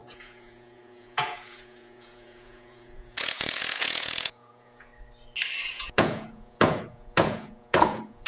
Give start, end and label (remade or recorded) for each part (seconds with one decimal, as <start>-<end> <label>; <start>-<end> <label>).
0.0-4.9 remade; 4.9-5.7 recorded; 5.7-8.3 remade